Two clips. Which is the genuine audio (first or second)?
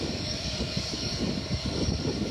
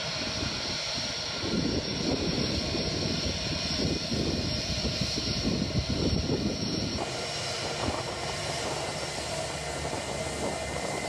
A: second